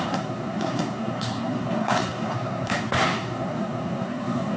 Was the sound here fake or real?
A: fake